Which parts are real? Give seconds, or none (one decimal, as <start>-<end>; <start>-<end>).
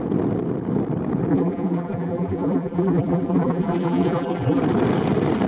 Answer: 0.0-1.3; 4.6-5.5